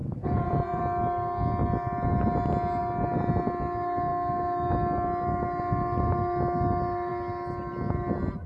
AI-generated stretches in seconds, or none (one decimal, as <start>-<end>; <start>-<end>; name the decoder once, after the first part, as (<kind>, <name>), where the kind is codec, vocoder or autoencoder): 0.0-0.8 (vocoder, Vocos)